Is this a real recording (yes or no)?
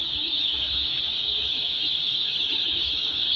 no